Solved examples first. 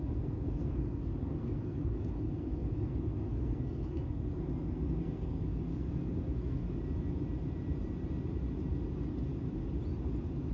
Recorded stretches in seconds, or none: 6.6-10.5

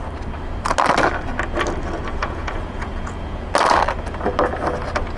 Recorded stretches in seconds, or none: 0.0-2.2; 3.5-5.2